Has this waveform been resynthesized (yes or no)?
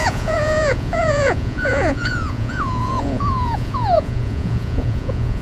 yes